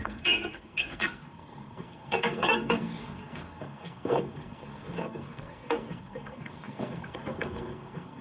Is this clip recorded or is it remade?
remade